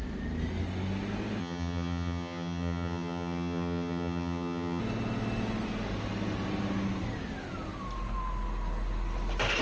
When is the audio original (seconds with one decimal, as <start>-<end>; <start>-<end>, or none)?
0.0-1.4; 4.8-9.6